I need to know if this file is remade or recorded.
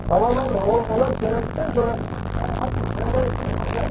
remade